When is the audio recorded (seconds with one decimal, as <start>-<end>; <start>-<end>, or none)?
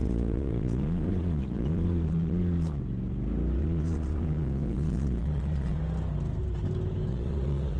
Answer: 2.8-3.6; 5.8-7.1